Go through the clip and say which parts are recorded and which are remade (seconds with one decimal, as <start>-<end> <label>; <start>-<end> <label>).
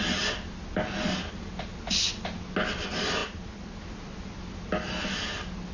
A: 0.0-5.7 recorded